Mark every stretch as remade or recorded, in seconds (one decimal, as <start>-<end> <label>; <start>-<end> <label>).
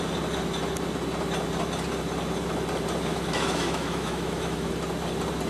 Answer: 0.0-3.1 recorded; 3.1-4.7 remade; 4.7-5.5 recorded